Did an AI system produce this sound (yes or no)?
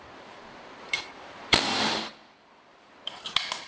yes